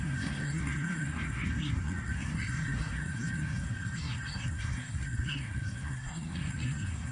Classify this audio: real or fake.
fake